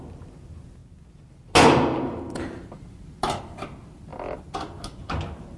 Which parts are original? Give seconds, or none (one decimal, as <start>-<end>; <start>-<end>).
0.0-5.6